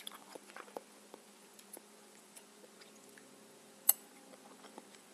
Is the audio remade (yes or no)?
yes